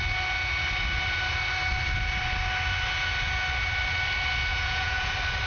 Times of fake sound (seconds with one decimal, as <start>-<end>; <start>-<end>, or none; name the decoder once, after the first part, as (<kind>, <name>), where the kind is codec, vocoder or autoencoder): 4.5-5.1 (vocoder, Vocos)